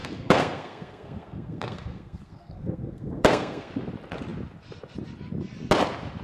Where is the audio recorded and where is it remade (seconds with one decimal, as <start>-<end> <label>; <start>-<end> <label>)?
0.0-3.7 remade; 3.7-6.2 recorded